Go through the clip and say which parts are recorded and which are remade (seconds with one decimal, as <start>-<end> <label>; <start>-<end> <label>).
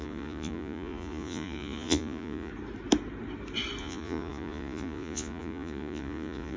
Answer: 0.0-2.5 remade; 2.5-3.8 recorded; 3.8-6.6 remade